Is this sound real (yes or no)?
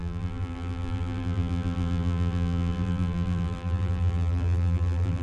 no